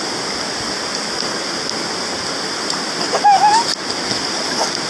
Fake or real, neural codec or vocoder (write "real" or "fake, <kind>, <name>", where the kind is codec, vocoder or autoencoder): real